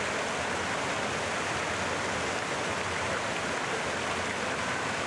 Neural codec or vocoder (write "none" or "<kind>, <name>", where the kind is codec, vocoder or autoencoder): none